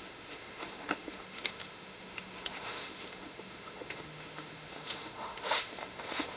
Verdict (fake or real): fake